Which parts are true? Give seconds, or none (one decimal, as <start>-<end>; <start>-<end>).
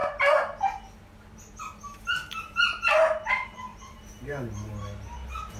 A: 0.0-3.7; 4.7-5.6